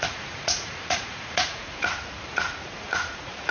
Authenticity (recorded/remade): remade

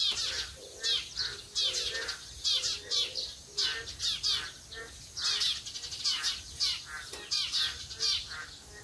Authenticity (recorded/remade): recorded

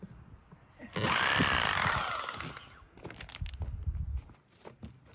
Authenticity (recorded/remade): recorded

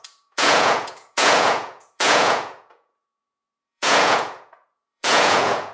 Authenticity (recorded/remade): remade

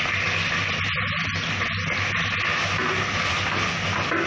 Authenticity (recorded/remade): recorded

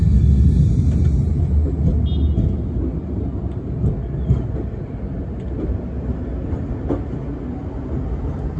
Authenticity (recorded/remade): recorded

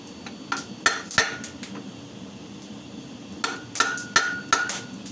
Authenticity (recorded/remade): recorded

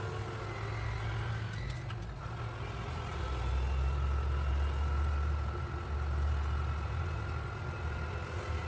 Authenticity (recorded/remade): recorded